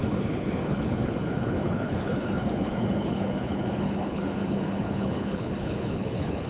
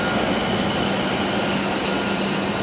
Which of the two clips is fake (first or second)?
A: first